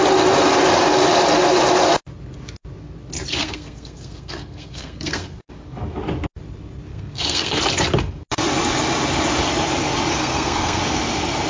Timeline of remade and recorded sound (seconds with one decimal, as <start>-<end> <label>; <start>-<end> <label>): 0.0-3.4 recorded; 3.4-5.5 remade; 5.5-6.9 recorded; 6.9-7.6 remade; 7.6-10.1 recorded; 10.1-10.8 remade; 10.8-11.5 recorded